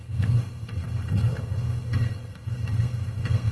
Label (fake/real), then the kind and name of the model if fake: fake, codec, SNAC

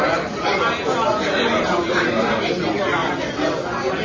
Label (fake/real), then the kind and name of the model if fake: real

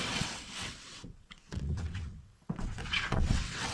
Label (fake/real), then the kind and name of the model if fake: fake, vocoder, WaveNeXt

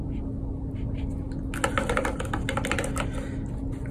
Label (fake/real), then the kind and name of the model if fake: real